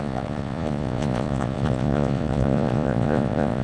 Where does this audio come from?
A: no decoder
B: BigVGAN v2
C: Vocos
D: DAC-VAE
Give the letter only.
C